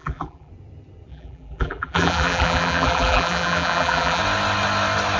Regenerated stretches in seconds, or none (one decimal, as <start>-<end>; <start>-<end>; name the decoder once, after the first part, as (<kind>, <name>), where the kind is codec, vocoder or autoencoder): 0.0-0.5 (vocoder, BigVGAN v2); 1.1-4.2